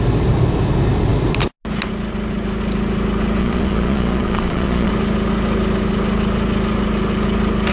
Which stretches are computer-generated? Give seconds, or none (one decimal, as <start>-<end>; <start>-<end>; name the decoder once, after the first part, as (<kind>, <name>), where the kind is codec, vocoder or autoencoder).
3.4-4.9 (vocoder, Vocos)